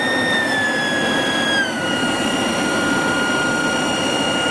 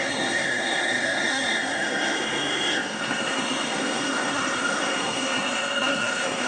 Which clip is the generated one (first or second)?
second